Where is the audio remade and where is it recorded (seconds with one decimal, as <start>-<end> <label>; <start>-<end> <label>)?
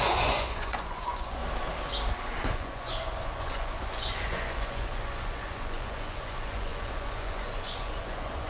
0.0-1.4 remade; 1.4-2.1 recorded; 2.1-8.5 remade